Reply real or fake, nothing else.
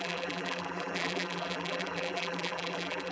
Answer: fake